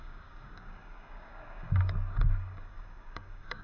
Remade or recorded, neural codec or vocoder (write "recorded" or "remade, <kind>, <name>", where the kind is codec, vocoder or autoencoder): remade, codec, DAC